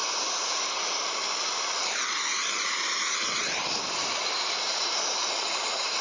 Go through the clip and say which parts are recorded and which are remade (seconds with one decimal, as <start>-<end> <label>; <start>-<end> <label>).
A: 0.0-1.1 remade; 1.1-2.3 recorded; 2.3-6.0 remade